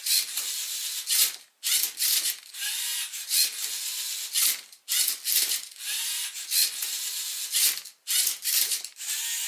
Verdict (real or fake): real